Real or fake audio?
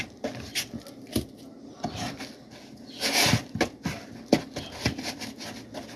real